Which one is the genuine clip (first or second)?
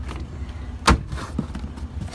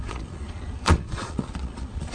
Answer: first